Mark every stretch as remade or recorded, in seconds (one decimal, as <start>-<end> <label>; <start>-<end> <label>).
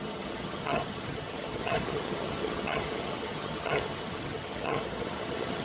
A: 0.0-5.6 remade